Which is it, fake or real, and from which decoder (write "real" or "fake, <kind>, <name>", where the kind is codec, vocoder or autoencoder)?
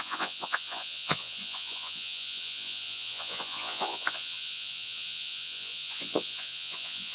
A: fake, vocoder, Vocos